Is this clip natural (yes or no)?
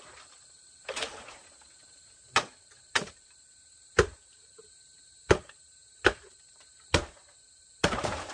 no